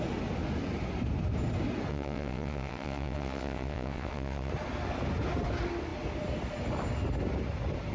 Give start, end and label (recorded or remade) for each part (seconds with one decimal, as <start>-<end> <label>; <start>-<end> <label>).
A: 0.0-1.9 recorded; 1.9-4.5 remade; 4.5-7.9 recorded